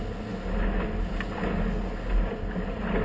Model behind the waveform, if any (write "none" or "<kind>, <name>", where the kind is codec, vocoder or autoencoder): none